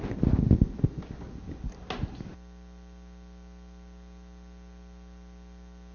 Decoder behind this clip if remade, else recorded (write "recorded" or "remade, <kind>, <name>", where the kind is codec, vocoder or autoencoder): recorded